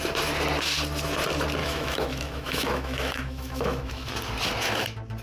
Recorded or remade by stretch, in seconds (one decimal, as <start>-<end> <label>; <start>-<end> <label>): 0.0-1.6 recorded; 1.6-4.1 remade; 4.1-5.2 recorded